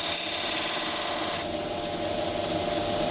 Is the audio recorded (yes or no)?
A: yes